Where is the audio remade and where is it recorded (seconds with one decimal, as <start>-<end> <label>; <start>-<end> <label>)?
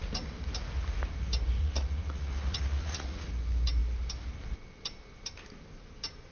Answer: 0.0-1.6 recorded; 1.6-3.3 remade; 3.3-6.3 recorded